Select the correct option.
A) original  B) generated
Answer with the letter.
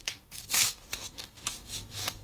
B